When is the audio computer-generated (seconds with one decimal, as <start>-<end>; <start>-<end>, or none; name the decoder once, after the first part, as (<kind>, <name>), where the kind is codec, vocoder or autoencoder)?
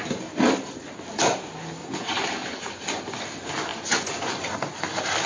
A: 1.8-3.0 (vocoder, Vocos); 3.7-4.5